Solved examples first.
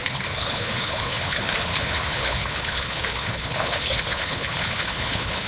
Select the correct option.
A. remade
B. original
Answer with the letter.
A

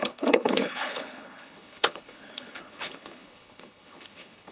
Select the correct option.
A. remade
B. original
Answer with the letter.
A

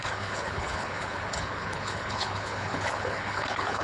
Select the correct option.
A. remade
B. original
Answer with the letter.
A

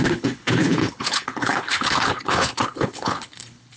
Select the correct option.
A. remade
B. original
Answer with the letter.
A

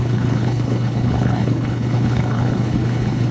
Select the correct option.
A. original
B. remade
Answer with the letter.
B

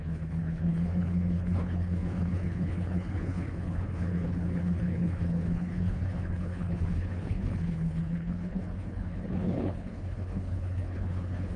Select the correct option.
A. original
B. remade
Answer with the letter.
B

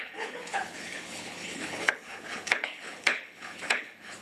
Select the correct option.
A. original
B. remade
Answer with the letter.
B